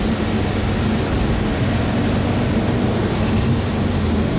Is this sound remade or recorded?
recorded